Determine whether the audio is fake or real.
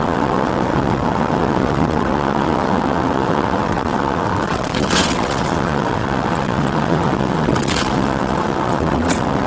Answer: fake